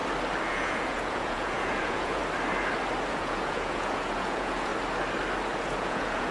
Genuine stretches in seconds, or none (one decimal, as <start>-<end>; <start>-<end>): 0.0-0.5; 2.2-3.1; 4.7-5.6